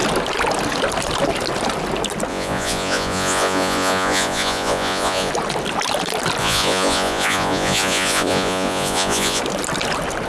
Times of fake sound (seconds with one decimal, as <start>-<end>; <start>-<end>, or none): 2.3-5.3; 6.4-9.4